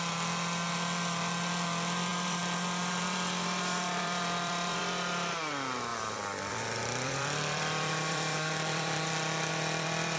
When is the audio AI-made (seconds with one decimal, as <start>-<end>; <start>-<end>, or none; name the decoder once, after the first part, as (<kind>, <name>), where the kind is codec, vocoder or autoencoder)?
2.1-4.8 (vocoder, BigVGAN v2); 5.9-10.2